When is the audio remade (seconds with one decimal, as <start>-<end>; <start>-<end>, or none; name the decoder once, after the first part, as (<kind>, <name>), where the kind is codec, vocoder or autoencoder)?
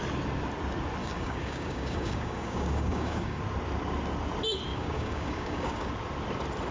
1.0-3.4 (codec, DAC); 4.7-5.9